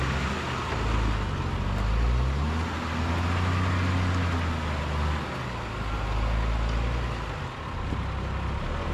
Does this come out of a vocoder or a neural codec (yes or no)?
no